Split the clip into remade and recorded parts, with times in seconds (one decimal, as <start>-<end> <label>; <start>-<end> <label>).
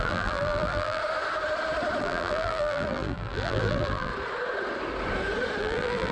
0.0-1.0 remade; 1.0-2.0 recorded; 2.0-4.1 remade; 4.1-5.6 recorded; 5.6-6.1 remade